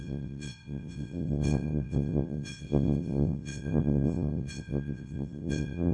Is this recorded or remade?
remade